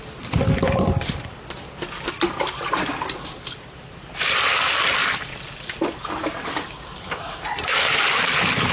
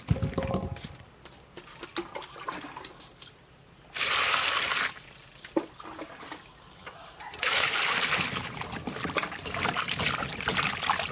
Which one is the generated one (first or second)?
first